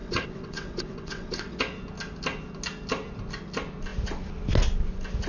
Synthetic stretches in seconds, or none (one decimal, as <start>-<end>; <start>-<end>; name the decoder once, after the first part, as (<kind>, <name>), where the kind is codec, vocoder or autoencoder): 0.0-1.6 (vocoder, WaveNeXt)